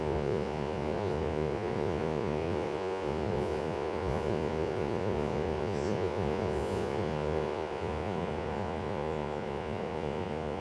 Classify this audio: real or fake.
fake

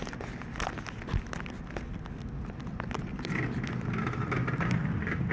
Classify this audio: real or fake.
real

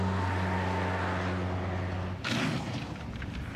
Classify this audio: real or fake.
real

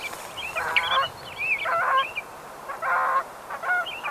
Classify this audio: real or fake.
real